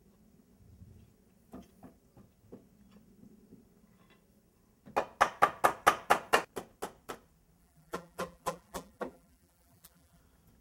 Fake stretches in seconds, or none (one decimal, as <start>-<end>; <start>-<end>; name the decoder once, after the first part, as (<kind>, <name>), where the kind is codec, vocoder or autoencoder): 7.6-10.2 (vocoder, BigVGAN v2)